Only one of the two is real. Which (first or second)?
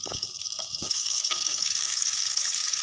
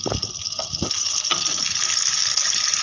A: second